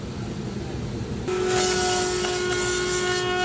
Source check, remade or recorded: recorded